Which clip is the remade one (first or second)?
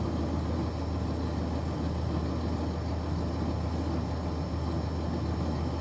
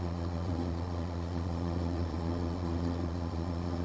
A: second